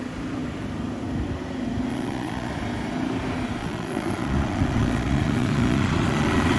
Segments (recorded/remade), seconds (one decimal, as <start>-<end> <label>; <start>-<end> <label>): 0.0-1.9 recorded; 1.9-2.5 remade; 2.5-3.6 recorded; 3.6-6.6 remade